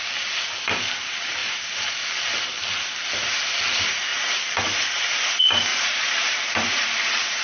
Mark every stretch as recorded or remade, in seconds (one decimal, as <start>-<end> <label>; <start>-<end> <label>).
0.0-1.4 recorded; 1.4-1.9 remade; 1.9-4.1 recorded; 4.1-4.8 remade; 4.8-5.7 recorded; 5.7-7.4 remade